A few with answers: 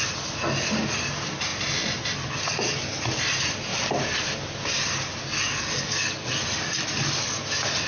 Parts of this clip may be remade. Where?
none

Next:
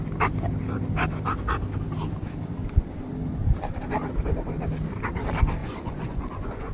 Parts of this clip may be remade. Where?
5.6-6.7 (vocoder, Vocos)